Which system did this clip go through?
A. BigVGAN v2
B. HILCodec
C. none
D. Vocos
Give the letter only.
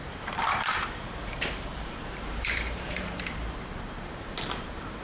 A